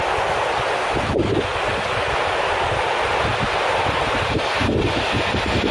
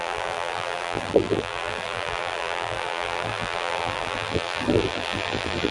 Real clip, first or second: first